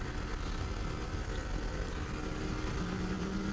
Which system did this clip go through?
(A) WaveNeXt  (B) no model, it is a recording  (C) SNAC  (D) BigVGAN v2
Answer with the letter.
B